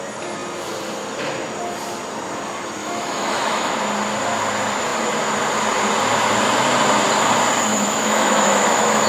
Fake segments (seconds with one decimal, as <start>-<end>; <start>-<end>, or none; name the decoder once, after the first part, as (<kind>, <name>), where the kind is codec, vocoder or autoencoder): 2.8-3.7 (autoencoder, DAC-VAE); 7.7-9.1